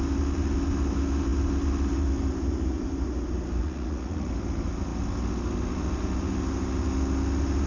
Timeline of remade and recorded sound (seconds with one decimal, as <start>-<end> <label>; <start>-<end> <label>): 0.0-3.6 recorded; 3.6-4.3 remade; 4.3-7.7 recorded

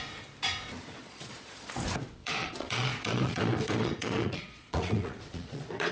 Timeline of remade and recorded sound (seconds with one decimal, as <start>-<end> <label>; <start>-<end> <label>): 0.0-1.0 recorded; 1.0-1.7 remade; 1.7-2.2 recorded; 2.2-5.9 remade

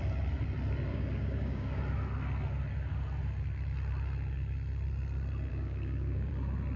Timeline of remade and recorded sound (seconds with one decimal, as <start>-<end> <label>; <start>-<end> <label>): 0.0-0.9 recorded; 0.9-1.8 remade; 1.8-5.5 recorded; 5.5-6.3 remade; 6.3-6.8 recorded

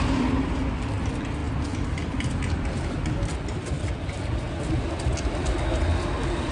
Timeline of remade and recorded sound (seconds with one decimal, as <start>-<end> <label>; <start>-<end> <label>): 0.0-6.5 recorded

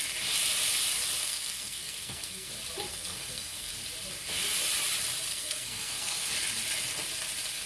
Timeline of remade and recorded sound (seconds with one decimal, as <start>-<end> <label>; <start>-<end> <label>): 0.0-1.2 recorded; 1.2-2.5 remade; 2.5-2.9 recorded; 2.9-3.7 remade; 3.7-5.3 recorded; 5.3-6.3 remade; 6.3-7.7 recorded

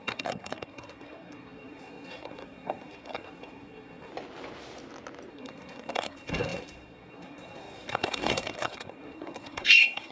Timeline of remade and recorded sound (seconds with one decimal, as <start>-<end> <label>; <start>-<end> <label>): 0.0-4.1 remade; 4.1-5.3 recorded; 5.3-10.1 remade

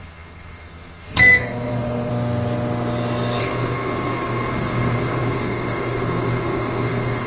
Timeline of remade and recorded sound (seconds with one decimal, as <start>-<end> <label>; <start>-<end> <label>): 0.0-2.1 remade; 2.1-3.4 recorded; 3.4-7.3 remade